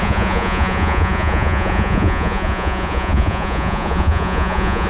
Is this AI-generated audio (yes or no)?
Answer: yes